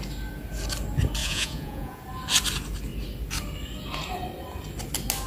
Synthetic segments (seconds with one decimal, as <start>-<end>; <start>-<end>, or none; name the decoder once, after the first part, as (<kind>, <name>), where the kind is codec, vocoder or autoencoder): 1.2-2.0 (vocoder, Vocos)